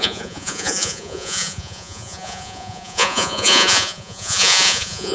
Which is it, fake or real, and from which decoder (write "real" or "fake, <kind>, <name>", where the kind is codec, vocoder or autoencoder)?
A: fake, vocoder, Vocos